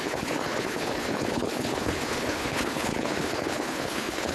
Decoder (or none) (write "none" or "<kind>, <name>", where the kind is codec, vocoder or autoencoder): codec, HILCodec